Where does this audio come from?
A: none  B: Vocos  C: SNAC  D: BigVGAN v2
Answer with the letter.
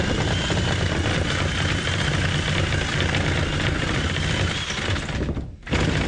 A